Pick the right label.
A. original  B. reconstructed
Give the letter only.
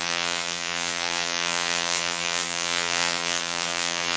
B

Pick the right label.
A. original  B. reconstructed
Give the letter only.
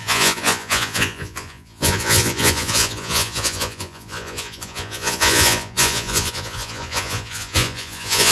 B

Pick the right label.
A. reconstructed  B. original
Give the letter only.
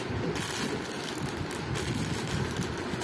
B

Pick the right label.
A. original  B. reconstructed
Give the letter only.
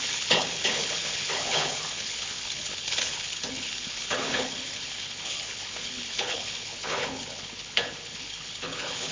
B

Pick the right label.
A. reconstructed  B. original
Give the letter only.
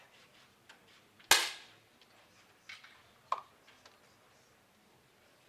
B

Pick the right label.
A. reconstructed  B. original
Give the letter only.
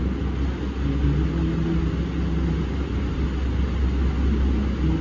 B